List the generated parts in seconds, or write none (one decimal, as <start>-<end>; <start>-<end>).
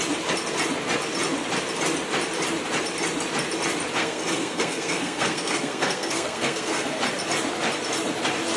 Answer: 4.0-7.0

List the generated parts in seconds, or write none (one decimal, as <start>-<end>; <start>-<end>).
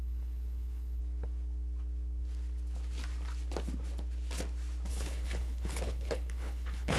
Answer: 0.0-1.0; 4.9-7.0